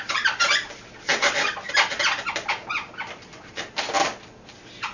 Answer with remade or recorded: recorded